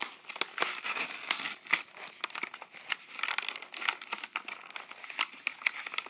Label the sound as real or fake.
real